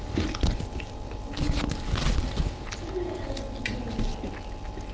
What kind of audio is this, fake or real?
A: real